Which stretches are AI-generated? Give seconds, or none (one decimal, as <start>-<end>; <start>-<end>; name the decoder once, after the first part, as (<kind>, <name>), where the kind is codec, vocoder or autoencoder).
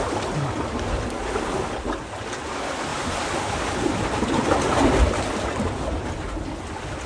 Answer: none